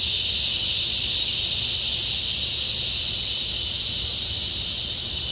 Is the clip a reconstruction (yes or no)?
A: no